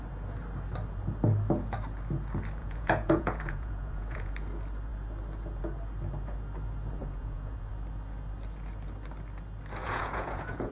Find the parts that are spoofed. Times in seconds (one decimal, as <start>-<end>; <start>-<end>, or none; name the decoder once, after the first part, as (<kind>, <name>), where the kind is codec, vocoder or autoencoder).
2.6-4.3 (vocoder, Vocos); 7.0-7.7; 9.8-10.7